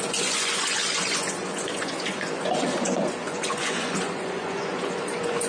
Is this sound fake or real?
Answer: fake